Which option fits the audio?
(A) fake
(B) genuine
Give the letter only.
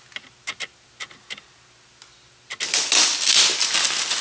B